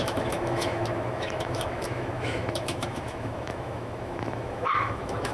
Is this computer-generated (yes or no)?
yes